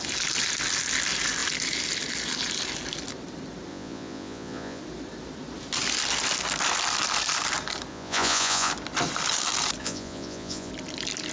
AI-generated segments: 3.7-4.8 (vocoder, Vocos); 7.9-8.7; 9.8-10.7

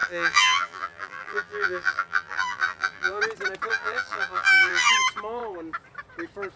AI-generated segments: 0.0-3.2 (vocoder, BigVGAN v2); 3.7-4.9

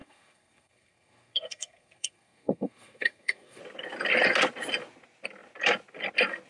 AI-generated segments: 0.0-3.6 (codec, SNAC)

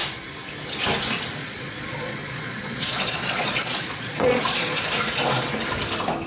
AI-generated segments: 1.4-4.9 (vocoder, Vocos)

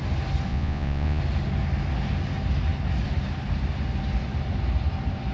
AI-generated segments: 0.5-1.2 (vocoder, Vocos)

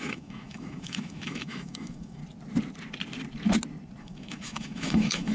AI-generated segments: 0.0-2.2 (autoencoder, DAC-VAE); 4.0-5.3